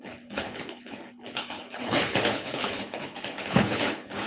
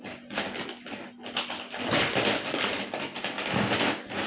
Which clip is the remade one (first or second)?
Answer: first